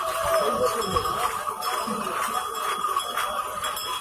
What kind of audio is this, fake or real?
real